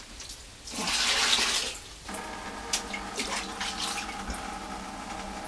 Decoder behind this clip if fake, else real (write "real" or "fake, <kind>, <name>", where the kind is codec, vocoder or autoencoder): real